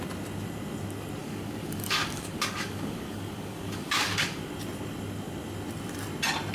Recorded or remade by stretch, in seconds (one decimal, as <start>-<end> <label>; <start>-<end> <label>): 0.0-1.2 recorded; 1.2-4.4 remade; 4.4-6.5 recorded